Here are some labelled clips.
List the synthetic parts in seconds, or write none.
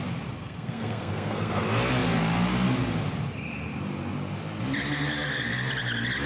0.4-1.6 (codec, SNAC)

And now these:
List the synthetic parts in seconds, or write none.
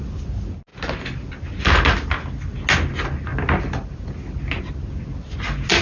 none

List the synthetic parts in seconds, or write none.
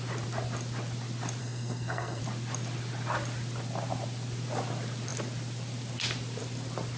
1.4-2.2 (codec, SNAC)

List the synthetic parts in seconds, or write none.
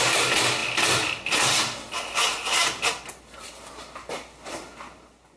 none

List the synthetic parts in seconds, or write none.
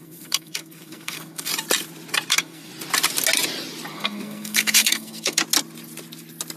0.0-1.5 (codec, SNAC); 2.3-2.7; 3.9-5.4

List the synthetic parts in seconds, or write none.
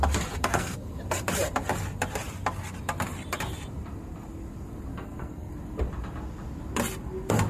0.4-0.9 (codec, SNAC); 4.9-5.5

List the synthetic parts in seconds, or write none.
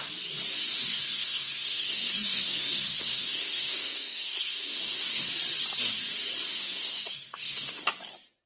0.9-5.3 (codec, SNAC); 6.5-7.8